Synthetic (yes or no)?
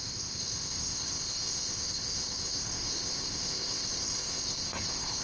yes